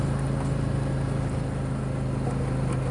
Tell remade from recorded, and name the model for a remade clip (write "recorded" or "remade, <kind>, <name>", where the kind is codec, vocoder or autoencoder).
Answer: recorded